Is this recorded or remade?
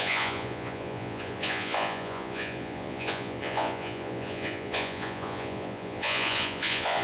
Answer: remade